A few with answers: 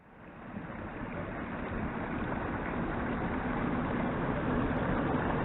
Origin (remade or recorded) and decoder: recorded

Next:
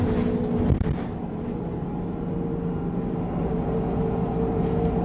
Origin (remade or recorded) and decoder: recorded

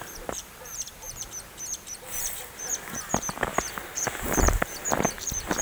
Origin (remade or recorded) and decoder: remade, vocoder, BigVGAN v2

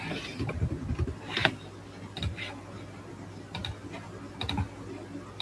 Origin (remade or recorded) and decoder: remade, vocoder, BigVGAN v2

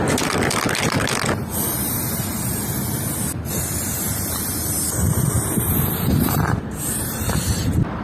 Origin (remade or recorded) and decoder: recorded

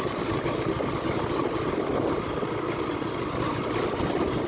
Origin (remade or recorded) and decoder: recorded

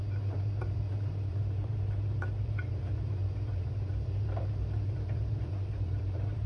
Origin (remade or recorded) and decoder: remade, vocoder, BigVGAN v2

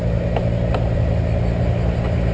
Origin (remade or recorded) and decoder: recorded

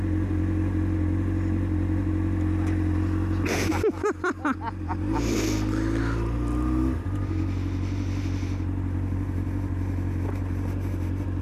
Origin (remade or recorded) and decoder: recorded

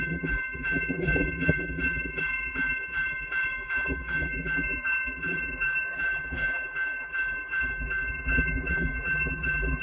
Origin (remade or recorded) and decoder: remade, vocoder, BigVGAN v2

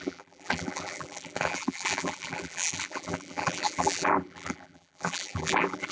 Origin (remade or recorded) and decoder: remade, vocoder, BigVGAN v2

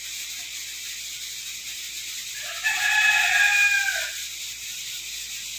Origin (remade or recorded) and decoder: recorded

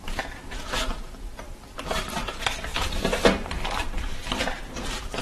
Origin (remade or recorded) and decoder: remade, vocoder, BigVGAN v2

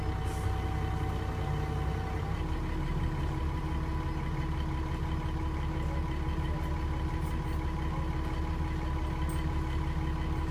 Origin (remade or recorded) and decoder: recorded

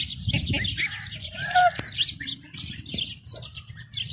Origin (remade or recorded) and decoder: recorded